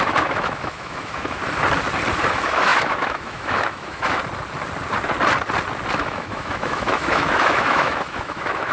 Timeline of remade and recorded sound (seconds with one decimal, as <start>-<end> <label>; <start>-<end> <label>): 0.0-1.4 remade; 1.4-2.3 recorded; 2.3-4.2 remade; 4.2-6.0 recorded; 6.0-8.7 remade